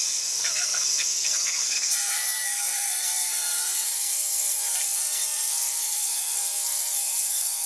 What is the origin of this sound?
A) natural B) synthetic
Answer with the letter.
B